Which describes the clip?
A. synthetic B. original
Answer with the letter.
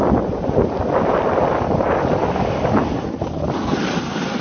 A